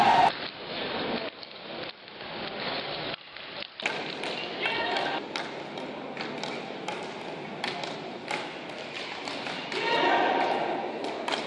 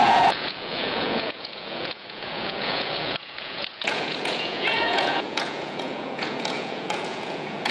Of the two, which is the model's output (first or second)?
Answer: second